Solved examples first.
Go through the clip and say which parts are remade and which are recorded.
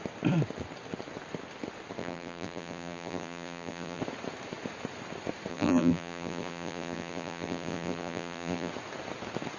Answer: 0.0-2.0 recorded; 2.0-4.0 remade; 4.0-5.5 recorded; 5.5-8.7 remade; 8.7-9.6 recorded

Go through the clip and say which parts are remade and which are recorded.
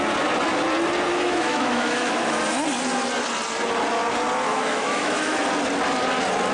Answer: 0.0-1.1 recorded; 1.1-2.4 remade; 2.4-4.5 recorded; 4.5-5.4 remade; 5.4-6.5 recorded